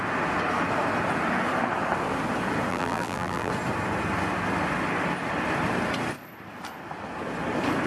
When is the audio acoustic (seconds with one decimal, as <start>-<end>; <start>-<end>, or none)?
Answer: 0.0-2.7; 3.5-7.9